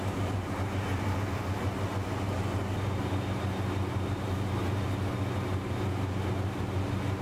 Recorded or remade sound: recorded